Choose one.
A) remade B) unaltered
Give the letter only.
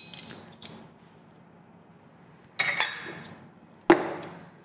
B